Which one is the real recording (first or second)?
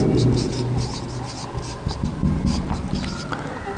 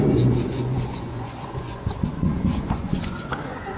first